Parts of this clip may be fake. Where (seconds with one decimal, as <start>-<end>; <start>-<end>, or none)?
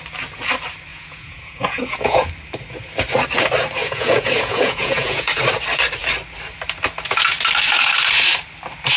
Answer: 0.9-2.3; 3.8-5.4